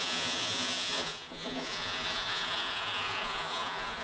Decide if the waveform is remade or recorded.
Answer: remade